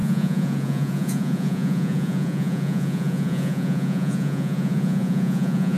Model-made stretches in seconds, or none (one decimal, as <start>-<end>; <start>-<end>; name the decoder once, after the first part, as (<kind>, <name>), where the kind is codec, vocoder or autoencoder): 0.0-5.8 (vocoder, Vocos)